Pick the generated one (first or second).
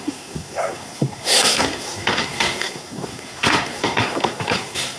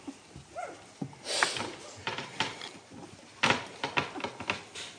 first